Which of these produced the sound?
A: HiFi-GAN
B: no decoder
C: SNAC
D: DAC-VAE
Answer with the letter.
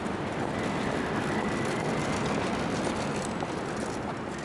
B